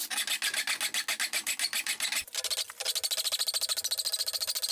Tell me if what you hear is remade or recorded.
recorded